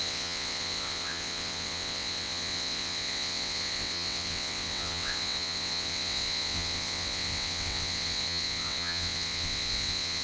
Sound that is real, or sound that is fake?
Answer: fake